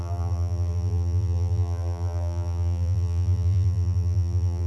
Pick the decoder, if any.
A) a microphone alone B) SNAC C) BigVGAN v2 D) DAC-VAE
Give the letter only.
C